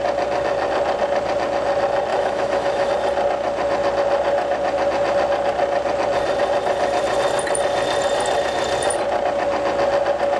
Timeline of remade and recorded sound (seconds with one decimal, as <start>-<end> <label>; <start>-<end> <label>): 0.0-2.1 recorded; 2.1-2.9 remade; 2.9-10.4 recorded